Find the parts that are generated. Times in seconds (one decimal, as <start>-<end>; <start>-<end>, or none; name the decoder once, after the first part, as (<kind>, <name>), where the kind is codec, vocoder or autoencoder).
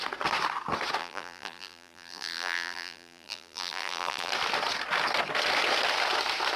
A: 1.0-4.3 (vocoder, BigVGAN v2)